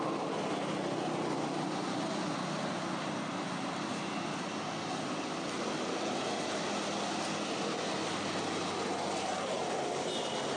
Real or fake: real